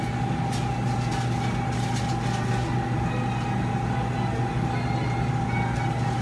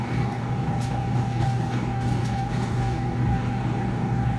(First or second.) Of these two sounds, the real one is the first